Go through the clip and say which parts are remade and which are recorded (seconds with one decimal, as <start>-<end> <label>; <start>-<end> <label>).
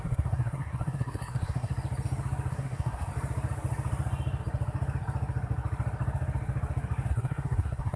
0.0-1.7 remade; 1.7-2.5 recorded; 2.5-3.1 remade; 3.1-7.1 recorded; 7.1-8.0 remade